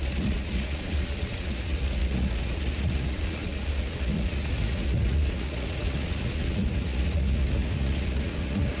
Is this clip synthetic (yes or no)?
yes